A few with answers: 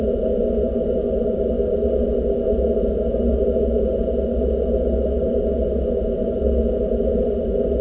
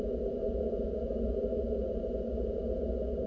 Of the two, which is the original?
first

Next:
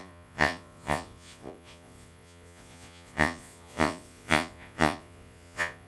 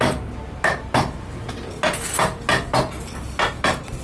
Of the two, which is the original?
second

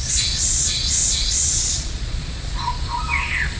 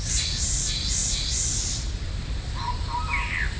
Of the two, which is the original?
second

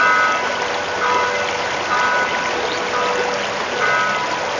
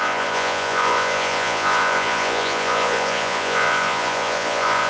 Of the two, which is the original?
first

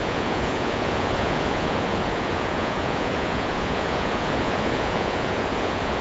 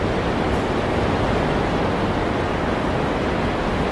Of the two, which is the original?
second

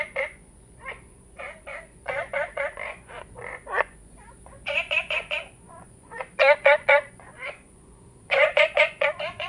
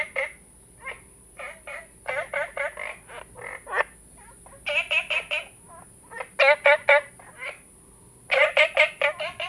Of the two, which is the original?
second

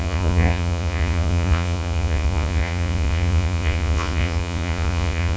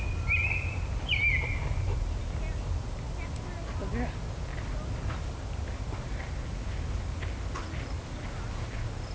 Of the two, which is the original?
second